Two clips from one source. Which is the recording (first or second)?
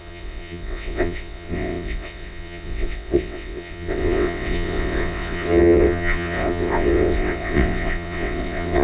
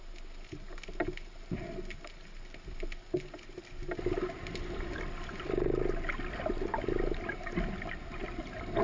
second